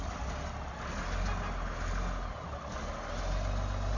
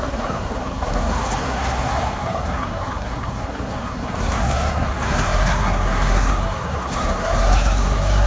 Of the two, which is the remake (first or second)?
second